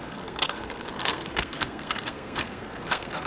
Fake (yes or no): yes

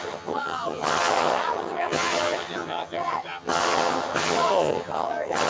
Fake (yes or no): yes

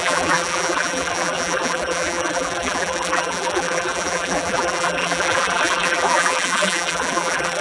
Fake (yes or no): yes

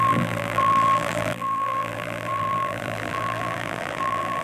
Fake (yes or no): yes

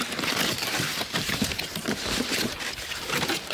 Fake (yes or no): yes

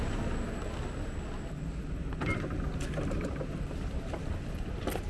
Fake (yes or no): no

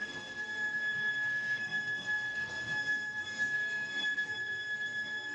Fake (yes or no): yes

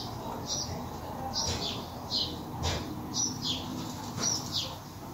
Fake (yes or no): no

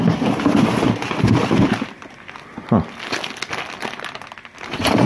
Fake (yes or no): no